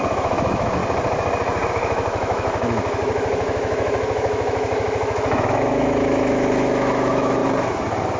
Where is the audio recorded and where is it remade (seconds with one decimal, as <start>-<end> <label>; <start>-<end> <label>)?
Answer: 0.0-0.8 remade; 0.8-1.7 recorded; 1.7-7.4 remade; 7.4-8.2 recorded